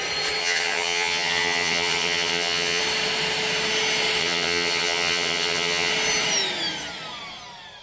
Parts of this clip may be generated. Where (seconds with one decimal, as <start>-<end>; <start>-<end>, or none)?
0.4-2.8; 4.2-5.9